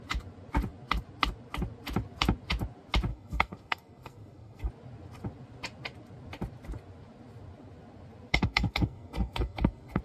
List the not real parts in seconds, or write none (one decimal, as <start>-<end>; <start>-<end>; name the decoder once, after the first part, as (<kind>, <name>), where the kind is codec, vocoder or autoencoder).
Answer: 3.1-4.7 (codec, SNAC); 8.3-10.0